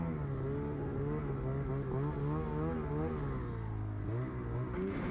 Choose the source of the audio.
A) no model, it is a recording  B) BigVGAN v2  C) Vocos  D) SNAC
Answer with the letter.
A